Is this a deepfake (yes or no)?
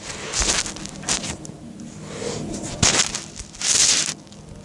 no